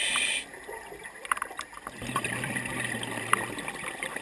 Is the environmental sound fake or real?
real